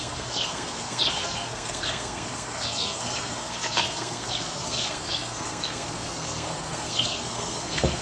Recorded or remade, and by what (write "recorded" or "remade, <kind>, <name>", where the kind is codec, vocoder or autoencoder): remade, codec, SNAC